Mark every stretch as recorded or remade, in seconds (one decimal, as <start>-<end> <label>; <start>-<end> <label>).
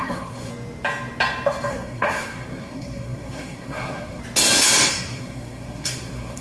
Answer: 0.0-0.5 remade; 0.5-1.7 recorded; 1.7-4.2 remade; 4.2-4.9 recorded; 4.9-6.4 remade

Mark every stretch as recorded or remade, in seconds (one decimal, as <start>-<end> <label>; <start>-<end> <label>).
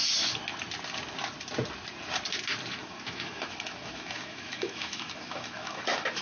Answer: 0.0-2.7 recorded; 2.7-6.2 remade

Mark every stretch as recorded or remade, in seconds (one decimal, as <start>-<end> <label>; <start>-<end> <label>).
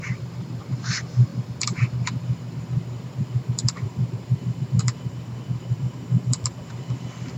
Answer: 0.0-7.4 remade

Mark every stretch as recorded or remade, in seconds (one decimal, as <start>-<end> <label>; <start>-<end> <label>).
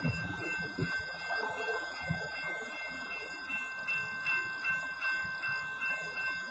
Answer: 0.0-3.6 remade; 3.6-4.7 recorded; 4.7-5.2 remade; 5.2-5.9 recorded; 5.9-6.5 remade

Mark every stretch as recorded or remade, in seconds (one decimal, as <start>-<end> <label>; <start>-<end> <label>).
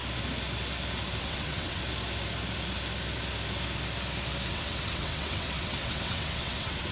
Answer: 0.0-1.2 recorded; 1.2-1.8 remade; 1.8-4.5 recorded; 4.5-6.9 remade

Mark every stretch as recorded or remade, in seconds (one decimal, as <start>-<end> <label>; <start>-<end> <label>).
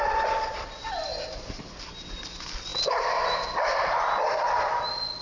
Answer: 0.0-5.2 recorded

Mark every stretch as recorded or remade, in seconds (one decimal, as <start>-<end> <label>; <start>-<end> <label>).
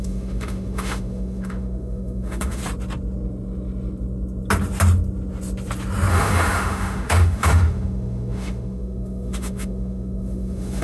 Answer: 0.0-2.6 remade; 2.6-6.1 recorded; 6.1-10.8 remade